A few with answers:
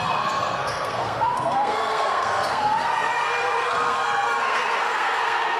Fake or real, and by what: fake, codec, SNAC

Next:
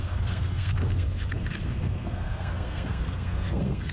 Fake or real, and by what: fake, codec, SNAC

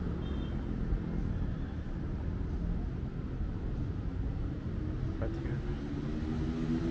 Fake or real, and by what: real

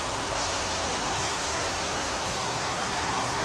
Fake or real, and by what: fake, codec, SNAC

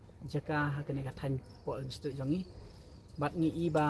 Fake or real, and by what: real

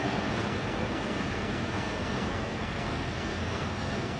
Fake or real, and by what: fake, codec, SNAC